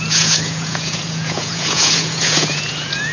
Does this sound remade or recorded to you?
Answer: remade